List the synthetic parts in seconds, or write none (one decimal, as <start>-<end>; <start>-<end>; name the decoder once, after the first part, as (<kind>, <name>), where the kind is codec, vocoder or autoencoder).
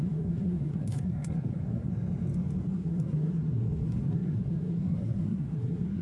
0.0-1.9 (codec, SNAC); 2.7-6.0